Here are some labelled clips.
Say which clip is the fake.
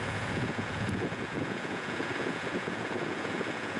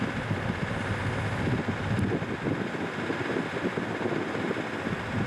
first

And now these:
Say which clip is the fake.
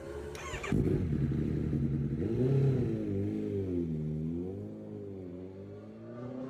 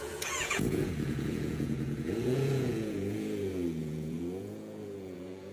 second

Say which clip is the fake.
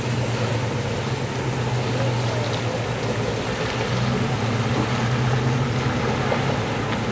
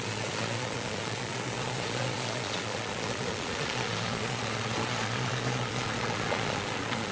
second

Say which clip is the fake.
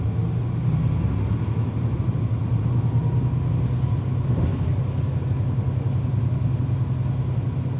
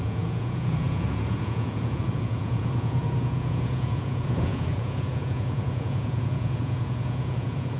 second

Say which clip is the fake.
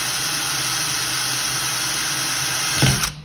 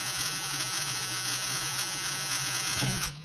second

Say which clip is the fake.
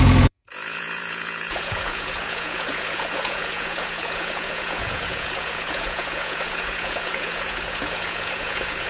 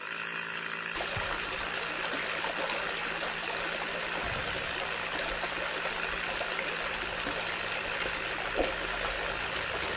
first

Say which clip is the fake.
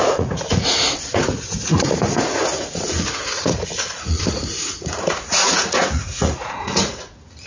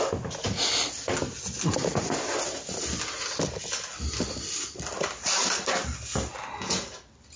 first